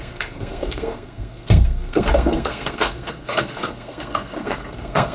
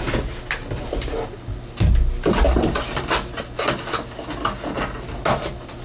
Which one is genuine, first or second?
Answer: second